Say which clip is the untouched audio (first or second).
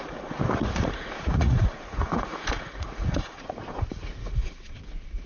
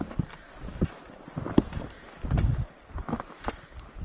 second